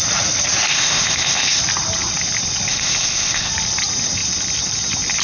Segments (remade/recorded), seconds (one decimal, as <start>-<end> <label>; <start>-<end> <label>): 0.0-0.7 recorded; 0.7-1.6 remade; 1.6-2.7 recorded; 2.7-3.5 remade; 3.5-5.2 recorded